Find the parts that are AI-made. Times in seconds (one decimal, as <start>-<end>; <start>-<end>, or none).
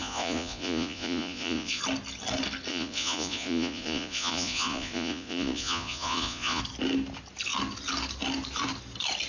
0.0-1.8; 2.7-6.6